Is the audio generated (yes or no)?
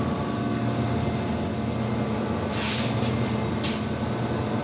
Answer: no